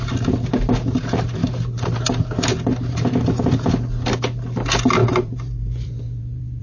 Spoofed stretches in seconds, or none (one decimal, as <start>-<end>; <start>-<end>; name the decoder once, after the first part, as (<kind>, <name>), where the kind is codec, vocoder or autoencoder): 1.4-2.0 (vocoder, BigVGAN v2); 5.0-6.6